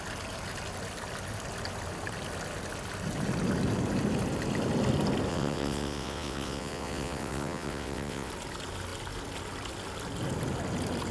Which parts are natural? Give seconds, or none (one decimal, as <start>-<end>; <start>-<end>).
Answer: 0.0-5.3; 8.3-11.1